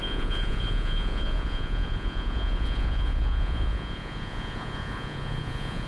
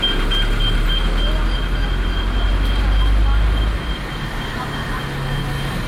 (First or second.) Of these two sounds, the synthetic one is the first